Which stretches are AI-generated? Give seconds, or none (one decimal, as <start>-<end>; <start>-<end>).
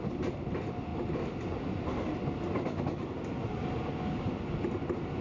none